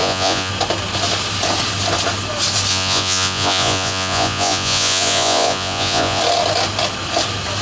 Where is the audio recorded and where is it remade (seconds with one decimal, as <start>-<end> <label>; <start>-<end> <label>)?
0.0-0.5 remade; 0.5-2.7 recorded; 2.7-6.2 remade; 6.2-7.6 recorded